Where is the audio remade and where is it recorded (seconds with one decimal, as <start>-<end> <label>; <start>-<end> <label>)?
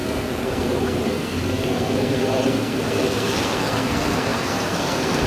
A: 0.0-5.3 remade